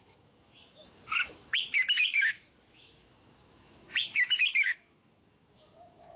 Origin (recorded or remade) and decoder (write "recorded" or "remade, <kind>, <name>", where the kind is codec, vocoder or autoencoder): remade, autoencoder, DAC-VAE